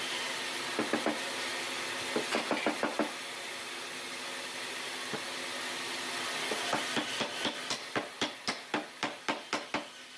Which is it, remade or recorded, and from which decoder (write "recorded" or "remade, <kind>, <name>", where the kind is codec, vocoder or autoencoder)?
recorded